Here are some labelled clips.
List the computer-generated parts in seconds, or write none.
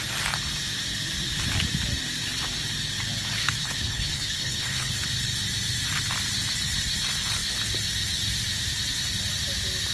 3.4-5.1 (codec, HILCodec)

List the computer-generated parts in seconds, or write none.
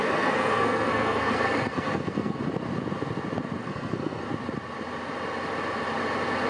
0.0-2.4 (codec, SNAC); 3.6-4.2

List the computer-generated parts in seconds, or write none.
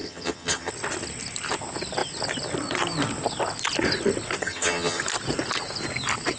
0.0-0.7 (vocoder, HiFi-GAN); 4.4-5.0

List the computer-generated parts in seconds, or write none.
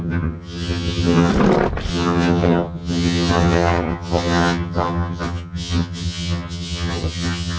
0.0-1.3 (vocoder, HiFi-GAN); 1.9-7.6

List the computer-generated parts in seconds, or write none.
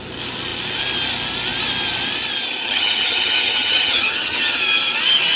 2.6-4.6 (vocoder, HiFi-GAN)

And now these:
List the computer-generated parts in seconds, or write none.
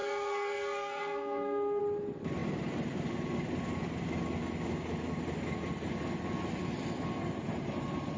0.0-1.8 (codec, SNAC)